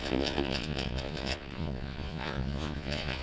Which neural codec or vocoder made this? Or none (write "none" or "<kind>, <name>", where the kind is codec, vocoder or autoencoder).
vocoder, Vocos